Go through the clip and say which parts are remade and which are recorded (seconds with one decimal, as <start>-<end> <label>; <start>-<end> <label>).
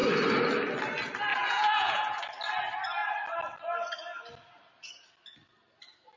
0.0-1.3 recorded; 1.3-2.2 remade; 2.2-6.2 recorded